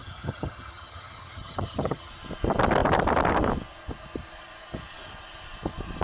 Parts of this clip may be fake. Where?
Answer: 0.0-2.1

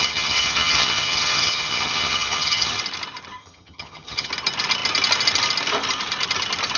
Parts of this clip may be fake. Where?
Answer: 0.0-2.8; 3.4-4.3

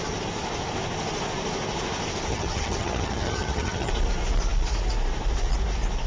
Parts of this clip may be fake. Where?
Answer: 2.3-3.9